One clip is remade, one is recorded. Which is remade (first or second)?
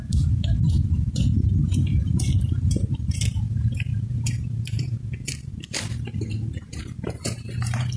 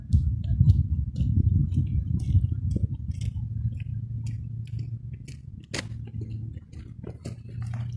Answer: first